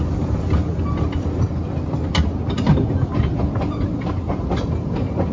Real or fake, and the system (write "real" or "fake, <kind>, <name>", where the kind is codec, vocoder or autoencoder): real